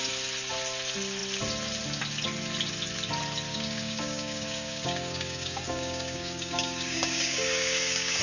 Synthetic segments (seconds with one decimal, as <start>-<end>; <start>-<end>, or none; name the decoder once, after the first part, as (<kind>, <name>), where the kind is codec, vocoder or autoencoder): 3.5-8.2 (codec, DAC)